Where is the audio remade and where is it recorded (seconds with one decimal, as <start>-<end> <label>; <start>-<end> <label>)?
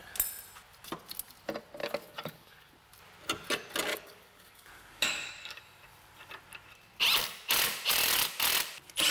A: 0.0-1.8 recorded; 1.8-2.7 remade; 2.7-3.9 recorded; 3.9-5.6 remade; 5.6-9.1 recorded